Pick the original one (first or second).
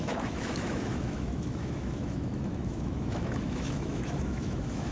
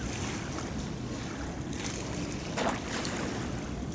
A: second